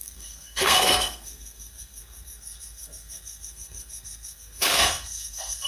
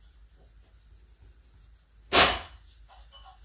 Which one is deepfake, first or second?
first